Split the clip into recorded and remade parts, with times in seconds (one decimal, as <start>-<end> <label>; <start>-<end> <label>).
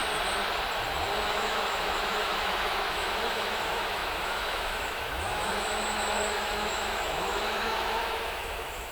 0.0-1.3 recorded; 1.3-8.9 remade